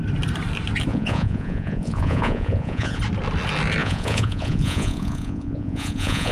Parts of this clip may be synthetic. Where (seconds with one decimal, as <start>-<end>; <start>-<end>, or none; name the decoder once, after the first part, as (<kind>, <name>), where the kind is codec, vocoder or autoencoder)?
0.9-3.0 (vocoder, Vocos); 3.8-6.3